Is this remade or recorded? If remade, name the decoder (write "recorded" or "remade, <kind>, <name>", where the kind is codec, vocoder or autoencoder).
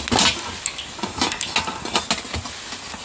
recorded